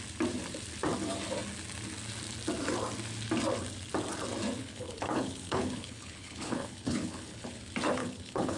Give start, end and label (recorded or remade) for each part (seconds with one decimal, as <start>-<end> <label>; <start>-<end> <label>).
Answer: 0.0-4.6 recorded; 4.6-7.6 remade; 7.6-8.0 recorded; 8.0-8.6 remade